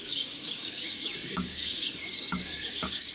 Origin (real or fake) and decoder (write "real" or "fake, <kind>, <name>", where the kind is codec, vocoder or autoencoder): fake, codec, DAC